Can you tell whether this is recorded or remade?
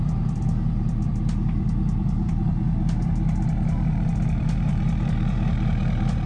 remade